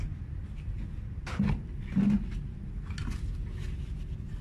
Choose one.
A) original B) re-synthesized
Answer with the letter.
A